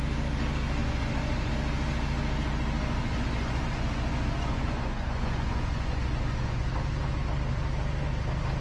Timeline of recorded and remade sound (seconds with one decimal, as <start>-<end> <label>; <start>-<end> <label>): 0.0-0.8 recorded; 0.8-1.5 remade; 1.5-2.8 recorded; 2.8-6.7 remade; 6.7-8.6 recorded